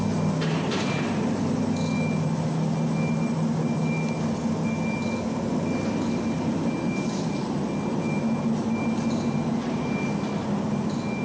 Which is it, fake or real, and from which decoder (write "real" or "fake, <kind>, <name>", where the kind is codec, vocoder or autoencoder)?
real